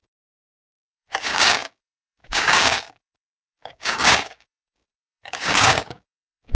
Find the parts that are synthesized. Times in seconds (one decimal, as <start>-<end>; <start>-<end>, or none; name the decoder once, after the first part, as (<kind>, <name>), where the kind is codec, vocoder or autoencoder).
0.0-6.5 (codec, DAC)